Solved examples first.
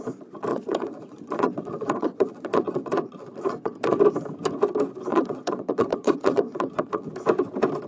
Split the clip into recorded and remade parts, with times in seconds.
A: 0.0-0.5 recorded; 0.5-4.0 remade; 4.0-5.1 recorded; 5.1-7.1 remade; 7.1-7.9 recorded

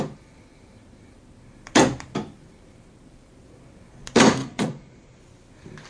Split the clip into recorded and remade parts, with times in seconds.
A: 0.0-4.4 recorded; 4.4-5.2 remade; 5.2-5.9 recorded

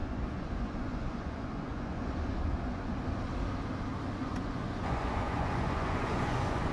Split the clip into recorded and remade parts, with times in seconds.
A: 0.0-2.9 remade; 2.9-4.2 recorded; 4.2-6.7 remade

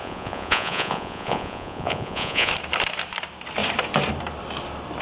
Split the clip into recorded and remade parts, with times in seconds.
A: 0.0-2.5 remade; 2.5-5.0 recorded

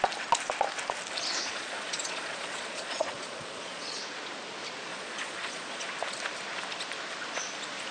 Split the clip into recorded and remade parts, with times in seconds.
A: 0.0-1.5 recorded; 1.5-4.0 remade; 4.0-4.9 recorded; 4.9-5.9 remade; 5.9-7.9 recorded

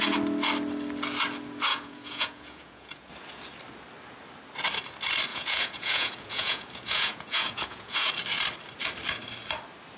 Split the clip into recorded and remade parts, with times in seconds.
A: 0.0-1.7 recorded; 1.7-3.1 remade; 3.1-5.3 recorded; 5.3-8.1 remade; 8.1-10.0 recorded

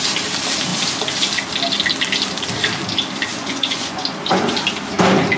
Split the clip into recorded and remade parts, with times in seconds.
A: 0.0-3.3 recorded; 3.3-4.5 remade; 4.5-5.4 recorded

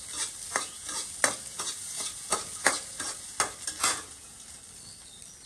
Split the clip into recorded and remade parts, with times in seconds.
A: 0.0-0.5 recorded; 0.5-1.1 remade; 1.1-1.5 recorded; 1.5-3.4 remade; 3.4-3.8 recorded; 3.8-4.6 remade; 4.6-5.5 recorded